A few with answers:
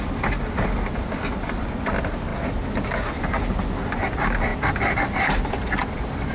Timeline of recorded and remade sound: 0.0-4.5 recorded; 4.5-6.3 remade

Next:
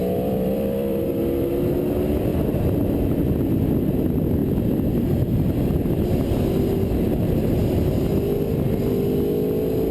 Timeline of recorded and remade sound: 0.0-1.5 remade; 1.5-9.9 recorded

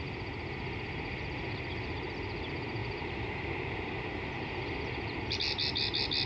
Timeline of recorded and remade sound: 0.0-2.8 recorded; 2.8-3.3 remade; 3.3-6.3 recorded

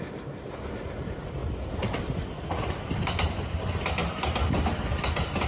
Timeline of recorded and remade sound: 0.0-5.5 recorded

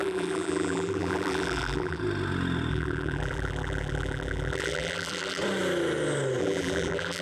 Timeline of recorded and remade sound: 0.0-2.0 remade; 2.0-2.7 recorded; 2.7-5.4 remade; 5.4-6.4 recorded; 6.4-7.2 remade